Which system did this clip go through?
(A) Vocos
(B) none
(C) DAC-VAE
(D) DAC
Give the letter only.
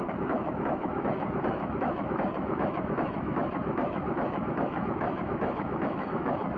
C